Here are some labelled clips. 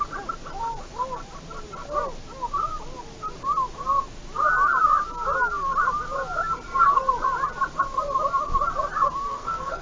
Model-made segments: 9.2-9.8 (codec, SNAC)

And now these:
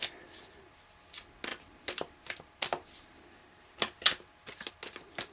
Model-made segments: none

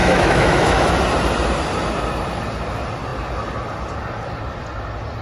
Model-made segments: 0.0-0.9 (autoencoder, DAC-VAE)

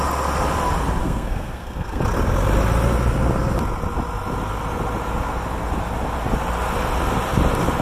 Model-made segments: 1.0-2.0 (codec, SNAC)

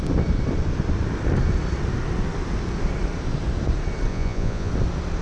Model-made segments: 4.1-4.7 (vocoder, Vocos)

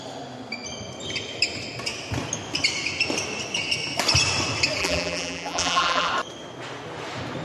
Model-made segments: 4.8-6.1 (vocoder, BigVGAN v2)

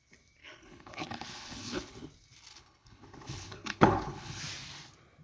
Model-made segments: 0.4-2.1 (codec, HILCodec); 2.5-4.4

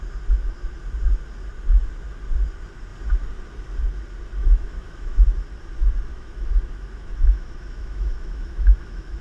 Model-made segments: 4.4-5.2 (autoencoder, DAC-VAE); 6.1-9.2